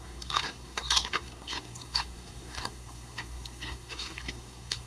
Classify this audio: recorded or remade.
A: remade